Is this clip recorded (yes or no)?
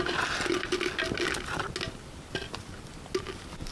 yes